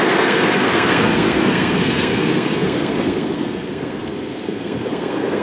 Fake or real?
fake